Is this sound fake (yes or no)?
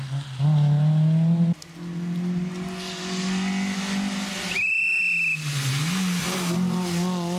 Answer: no